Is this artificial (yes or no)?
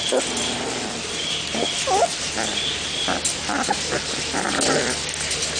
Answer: no